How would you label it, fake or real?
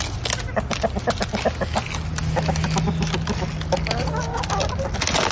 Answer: real